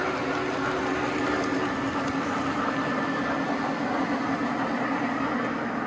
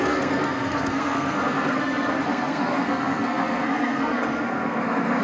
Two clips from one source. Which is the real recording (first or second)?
first